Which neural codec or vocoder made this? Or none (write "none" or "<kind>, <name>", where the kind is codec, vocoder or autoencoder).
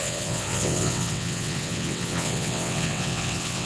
vocoder, WaveNeXt